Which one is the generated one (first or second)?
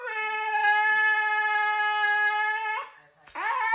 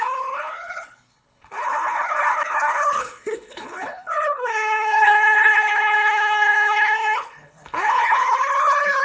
second